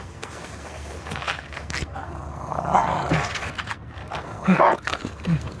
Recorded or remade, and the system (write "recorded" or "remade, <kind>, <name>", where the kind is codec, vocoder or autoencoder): remade, codec, SNAC